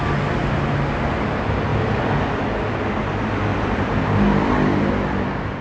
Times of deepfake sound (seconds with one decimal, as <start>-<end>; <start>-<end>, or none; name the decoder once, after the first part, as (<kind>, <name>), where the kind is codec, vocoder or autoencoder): 1.7-2.7 (vocoder, BigVGAN v2); 3.5-5.1

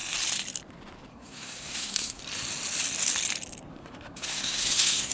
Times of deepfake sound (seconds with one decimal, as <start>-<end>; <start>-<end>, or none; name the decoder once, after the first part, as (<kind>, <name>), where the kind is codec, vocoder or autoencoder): 1.1-2.2 (codec, SNAC); 3.7-5.1

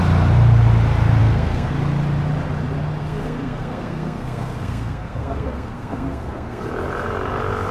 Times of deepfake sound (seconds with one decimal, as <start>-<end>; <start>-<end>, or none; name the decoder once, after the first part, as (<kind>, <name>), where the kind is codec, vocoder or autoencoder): 1.2-1.7 (codec, SNAC); 3.0-6.7

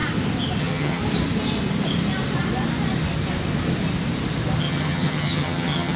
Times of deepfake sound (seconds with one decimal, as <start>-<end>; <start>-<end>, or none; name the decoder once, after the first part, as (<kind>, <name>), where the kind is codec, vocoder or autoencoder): 0.6-1.0 (vocoder, HiFi-GAN); 4.6-6.0

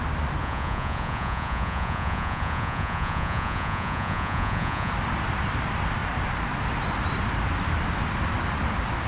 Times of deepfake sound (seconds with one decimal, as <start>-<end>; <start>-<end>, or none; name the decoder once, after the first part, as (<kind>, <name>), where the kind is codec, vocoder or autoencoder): 0.4-4.9 (vocoder, Vocos)

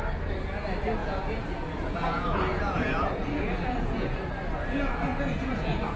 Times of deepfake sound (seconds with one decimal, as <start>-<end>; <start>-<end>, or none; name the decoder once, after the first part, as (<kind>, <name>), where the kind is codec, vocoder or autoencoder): 1.0-4.3 (vocoder, Vocos); 5.1-6.0

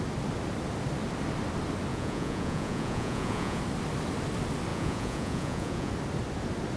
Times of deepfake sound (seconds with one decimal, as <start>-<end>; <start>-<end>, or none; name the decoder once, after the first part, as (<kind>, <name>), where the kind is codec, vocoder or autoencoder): 1.9-3.6 (vocoder, Vocos); 4.7-5.9